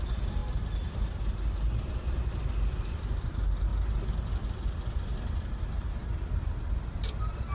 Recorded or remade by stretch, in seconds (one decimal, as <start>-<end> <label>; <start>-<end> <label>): 0.0-7.5 recorded